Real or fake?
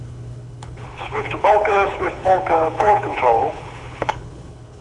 fake